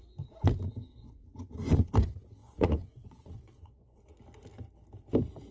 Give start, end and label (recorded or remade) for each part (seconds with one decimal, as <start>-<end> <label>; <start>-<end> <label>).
0.0-0.9 recorded; 0.9-1.9 remade; 1.9-2.4 recorded; 2.4-4.0 remade; 4.0-5.5 recorded